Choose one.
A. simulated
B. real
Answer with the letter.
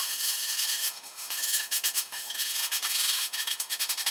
A